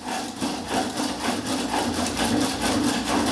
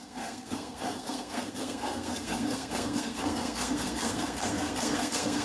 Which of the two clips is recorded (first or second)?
first